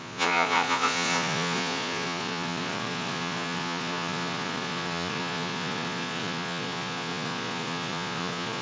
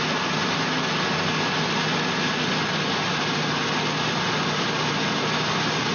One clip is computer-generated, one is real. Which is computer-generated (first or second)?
first